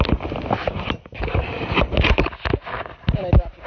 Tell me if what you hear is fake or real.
real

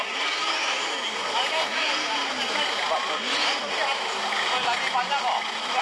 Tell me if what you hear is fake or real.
real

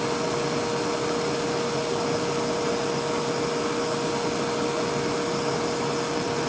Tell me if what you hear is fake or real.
real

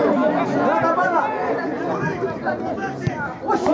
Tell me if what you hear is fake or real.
real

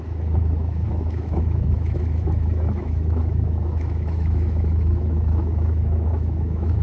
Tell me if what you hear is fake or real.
fake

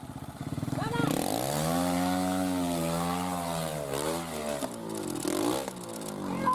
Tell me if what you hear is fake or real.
real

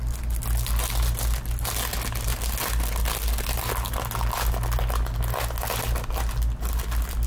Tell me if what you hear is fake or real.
real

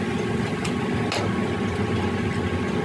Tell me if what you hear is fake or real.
real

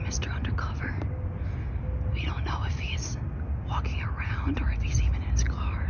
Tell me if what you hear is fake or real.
real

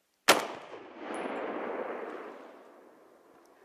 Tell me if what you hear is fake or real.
real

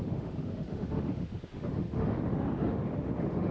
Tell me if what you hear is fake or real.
fake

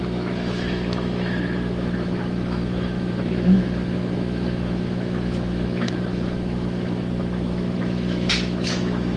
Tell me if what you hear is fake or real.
fake